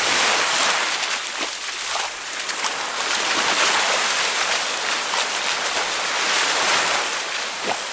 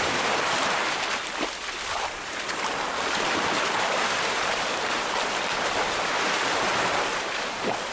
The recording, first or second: first